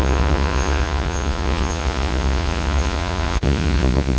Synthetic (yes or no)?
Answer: yes